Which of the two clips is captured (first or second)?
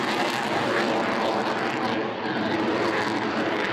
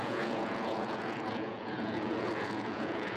first